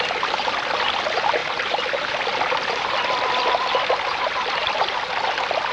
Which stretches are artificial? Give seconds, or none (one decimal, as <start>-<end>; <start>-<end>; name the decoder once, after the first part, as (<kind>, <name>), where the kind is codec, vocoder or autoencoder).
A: none